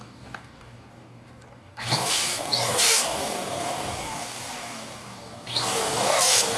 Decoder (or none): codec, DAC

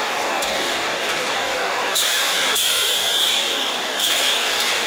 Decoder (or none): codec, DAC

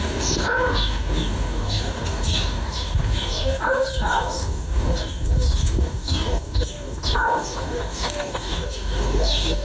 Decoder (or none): codec, DAC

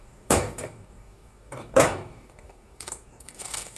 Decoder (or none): codec, DAC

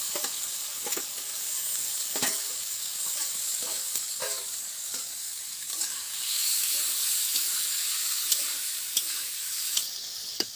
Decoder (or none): codec, DAC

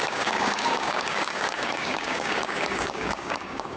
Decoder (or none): codec, DAC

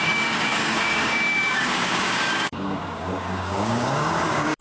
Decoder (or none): codec, DAC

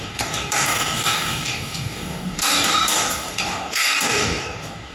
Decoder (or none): codec, DAC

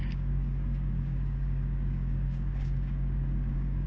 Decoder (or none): codec, DAC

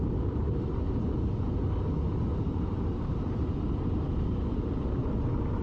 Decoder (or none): none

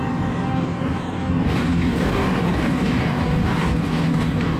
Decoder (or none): codec, DAC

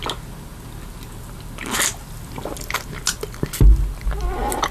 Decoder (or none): none